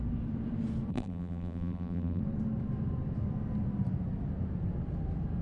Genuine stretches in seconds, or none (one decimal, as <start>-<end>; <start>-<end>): 0.0-0.9; 2.2-5.4